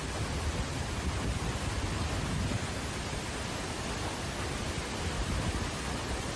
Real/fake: real